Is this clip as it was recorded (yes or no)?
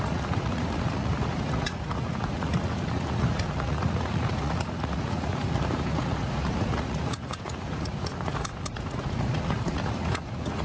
no